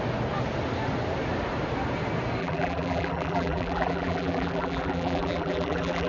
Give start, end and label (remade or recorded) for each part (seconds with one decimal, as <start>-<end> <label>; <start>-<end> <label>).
0.0-2.4 recorded; 2.4-6.1 remade